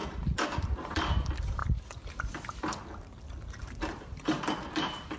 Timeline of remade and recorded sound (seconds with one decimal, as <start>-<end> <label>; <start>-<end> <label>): 0.0-3.6 recorded; 3.6-4.4 remade; 4.4-5.2 recorded